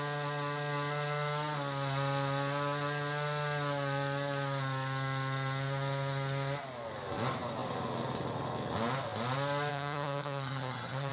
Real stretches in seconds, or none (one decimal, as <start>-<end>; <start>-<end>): 0.0-9.7